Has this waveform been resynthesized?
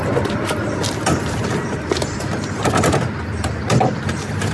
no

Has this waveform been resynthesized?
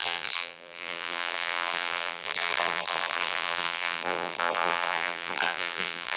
yes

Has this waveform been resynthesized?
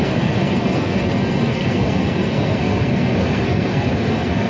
yes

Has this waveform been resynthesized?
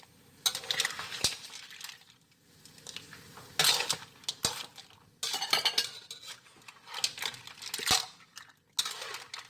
no